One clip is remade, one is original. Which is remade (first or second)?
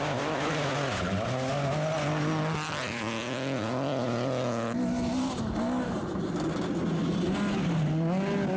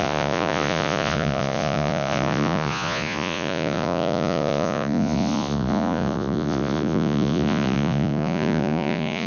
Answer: second